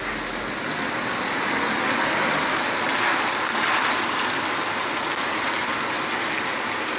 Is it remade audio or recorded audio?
recorded